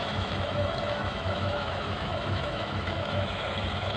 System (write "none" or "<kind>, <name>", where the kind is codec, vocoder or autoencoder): autoencoder, DAC-VAE